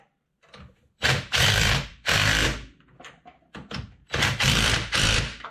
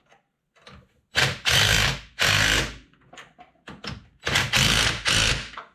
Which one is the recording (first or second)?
second